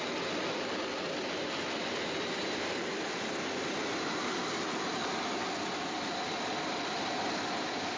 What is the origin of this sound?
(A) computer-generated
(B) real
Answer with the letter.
B